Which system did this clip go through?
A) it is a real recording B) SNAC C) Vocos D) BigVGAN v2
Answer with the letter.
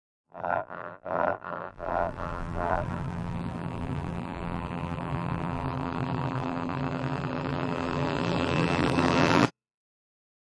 D